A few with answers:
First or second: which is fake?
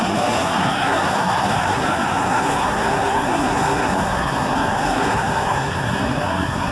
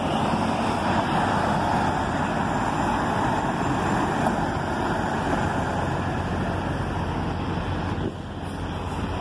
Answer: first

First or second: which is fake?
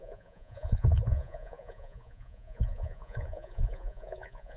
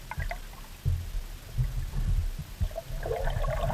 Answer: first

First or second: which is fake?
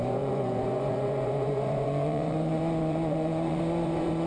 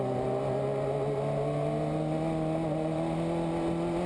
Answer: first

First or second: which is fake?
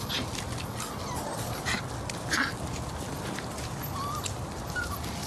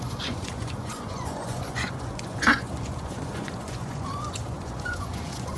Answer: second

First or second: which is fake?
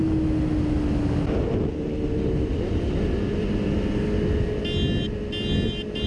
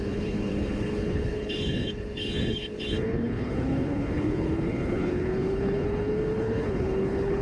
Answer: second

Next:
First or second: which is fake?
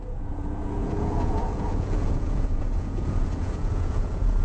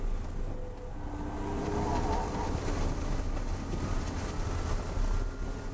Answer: first